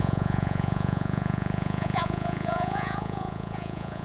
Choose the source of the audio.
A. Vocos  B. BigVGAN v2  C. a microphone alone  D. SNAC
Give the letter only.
A